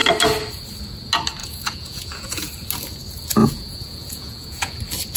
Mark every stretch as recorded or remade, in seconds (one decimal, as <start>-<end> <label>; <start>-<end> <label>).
0.0-1.4 recorded; 1.4-2.5 remade; 2.5-3.4 recorded; 3.4-4.8 remade; 4.8-5.2 recorded